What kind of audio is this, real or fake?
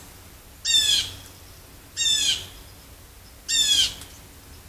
real